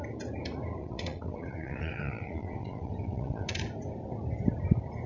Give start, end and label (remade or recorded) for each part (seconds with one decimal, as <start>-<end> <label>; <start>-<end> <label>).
0.0-0.8 recorded; 0.8-3.6 remade; 3.6-5.1 recorded

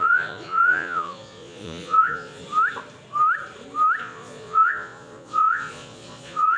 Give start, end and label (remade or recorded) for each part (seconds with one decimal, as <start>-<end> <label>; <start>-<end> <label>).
0.0-2.4 remade; 2.4-4.0 recorded; 4.0-6.6 remade